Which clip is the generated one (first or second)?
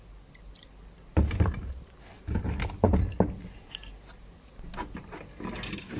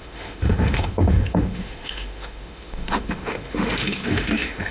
second